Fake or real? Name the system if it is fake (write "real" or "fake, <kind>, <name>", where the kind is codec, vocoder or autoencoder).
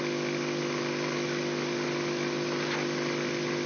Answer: real